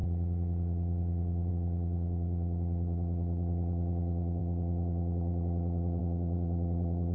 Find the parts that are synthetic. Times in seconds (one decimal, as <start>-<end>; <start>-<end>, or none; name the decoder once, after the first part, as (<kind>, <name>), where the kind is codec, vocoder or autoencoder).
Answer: 0.0-7.1 (vocoder, Vocos)